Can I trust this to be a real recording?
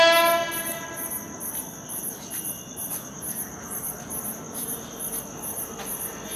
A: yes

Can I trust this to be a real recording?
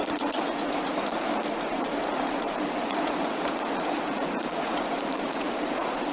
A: no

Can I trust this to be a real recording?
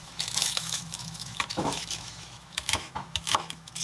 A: no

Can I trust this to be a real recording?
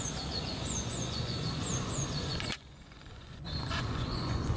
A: no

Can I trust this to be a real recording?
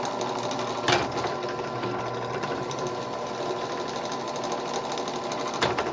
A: yes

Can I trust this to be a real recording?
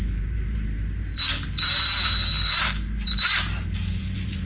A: no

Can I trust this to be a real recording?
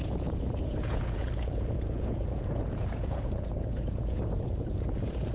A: no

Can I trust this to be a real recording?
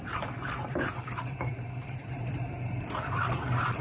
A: no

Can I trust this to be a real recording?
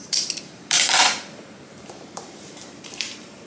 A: no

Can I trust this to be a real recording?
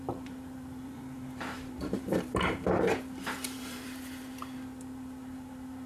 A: no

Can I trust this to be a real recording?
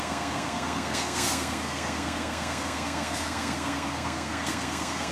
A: no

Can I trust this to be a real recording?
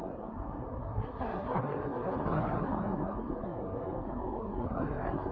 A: no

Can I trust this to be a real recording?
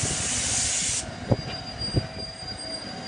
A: yes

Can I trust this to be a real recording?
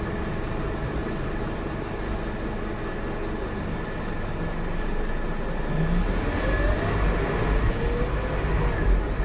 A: yes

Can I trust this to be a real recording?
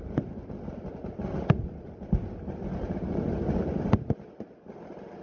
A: yes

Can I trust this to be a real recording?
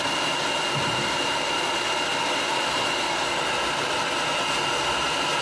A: yes